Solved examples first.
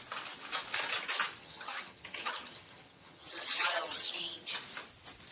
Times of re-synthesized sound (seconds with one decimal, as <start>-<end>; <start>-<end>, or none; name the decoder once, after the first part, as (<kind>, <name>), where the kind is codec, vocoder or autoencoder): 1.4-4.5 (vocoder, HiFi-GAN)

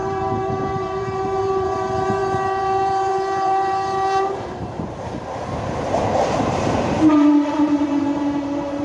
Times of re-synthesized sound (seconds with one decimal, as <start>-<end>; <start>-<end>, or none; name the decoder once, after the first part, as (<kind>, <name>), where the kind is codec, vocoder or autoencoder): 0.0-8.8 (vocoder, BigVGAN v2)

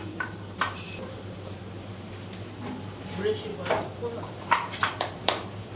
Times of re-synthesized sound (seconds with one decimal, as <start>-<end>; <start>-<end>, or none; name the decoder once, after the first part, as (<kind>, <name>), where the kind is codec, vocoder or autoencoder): 0.0-3.5 (vocoder, BigVGAN v2); 4.2-5.8

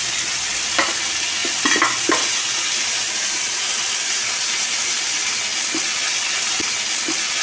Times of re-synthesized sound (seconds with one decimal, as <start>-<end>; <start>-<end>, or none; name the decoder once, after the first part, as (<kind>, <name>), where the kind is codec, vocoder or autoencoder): none

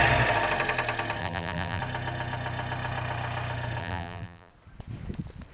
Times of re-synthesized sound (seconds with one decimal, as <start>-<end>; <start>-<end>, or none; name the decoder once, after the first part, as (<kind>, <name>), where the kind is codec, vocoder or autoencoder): 1.2-1.8 (vocoder, BigVGAN v2); 3.8-4.5

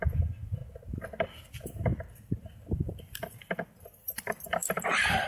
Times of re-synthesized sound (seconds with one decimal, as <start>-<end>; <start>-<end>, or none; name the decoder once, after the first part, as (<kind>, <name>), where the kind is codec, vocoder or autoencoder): 0.0-0.6 (vocoder, BigVGAN v2); 1.5-5.3

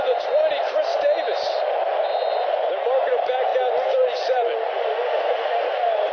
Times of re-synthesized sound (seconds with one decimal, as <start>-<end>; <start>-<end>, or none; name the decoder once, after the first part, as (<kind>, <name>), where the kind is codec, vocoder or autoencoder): none

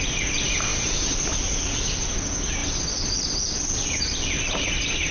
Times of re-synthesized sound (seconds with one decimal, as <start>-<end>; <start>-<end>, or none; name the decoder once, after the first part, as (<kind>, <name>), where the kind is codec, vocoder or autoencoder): none